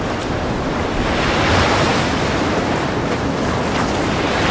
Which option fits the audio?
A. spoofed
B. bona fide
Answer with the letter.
B